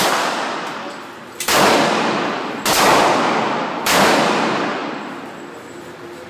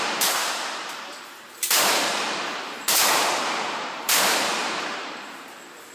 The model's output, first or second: second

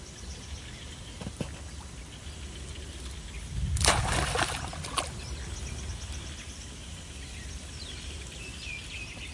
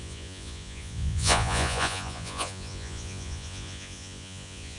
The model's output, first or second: second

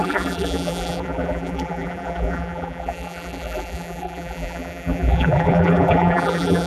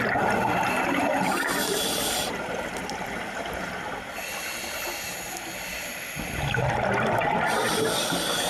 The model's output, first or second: first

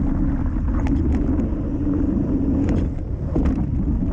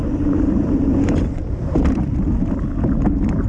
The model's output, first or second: second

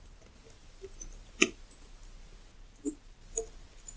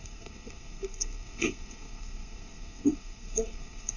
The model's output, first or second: second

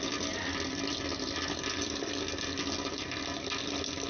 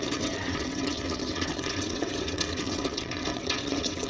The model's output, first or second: second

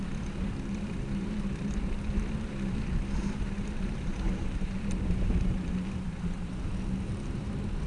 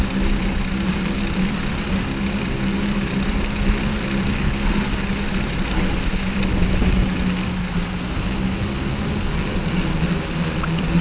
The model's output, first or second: first